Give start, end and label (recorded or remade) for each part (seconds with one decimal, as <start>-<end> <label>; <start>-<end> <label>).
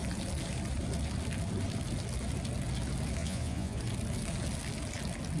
0.0-3.2 recorded; 3.2-3.8 remade; 3.8-5.4 recorded